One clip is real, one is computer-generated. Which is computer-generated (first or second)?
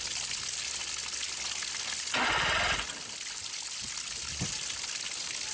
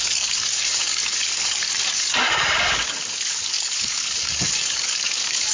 second